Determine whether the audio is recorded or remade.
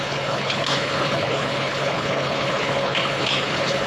remade